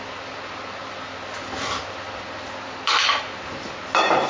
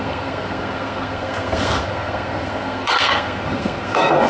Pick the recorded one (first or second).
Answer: first